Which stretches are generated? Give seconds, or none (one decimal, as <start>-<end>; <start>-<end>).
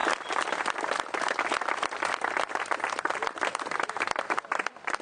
none